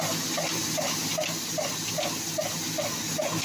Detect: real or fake real